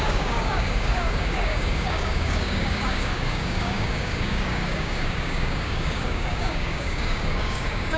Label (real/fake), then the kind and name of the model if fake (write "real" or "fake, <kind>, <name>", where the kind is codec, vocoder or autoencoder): fake, codec, DAC